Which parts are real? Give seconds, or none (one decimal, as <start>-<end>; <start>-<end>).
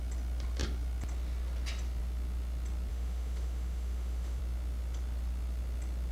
0.0-2.9; 4.4-6.1